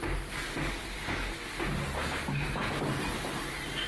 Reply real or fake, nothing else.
real